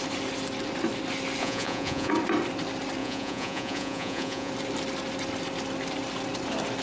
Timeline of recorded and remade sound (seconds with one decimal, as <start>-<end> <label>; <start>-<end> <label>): 0.0-1.4 recorded; 1.4-2.1 remade; 2.1-3.0 recorded; 3.0-4.5 remade; 4.5-6.8 recorded